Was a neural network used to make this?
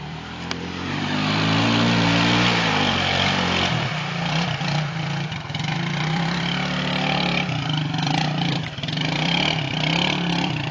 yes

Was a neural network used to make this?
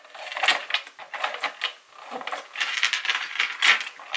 no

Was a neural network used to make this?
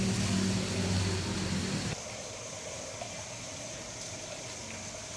no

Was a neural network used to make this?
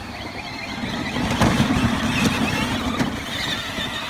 no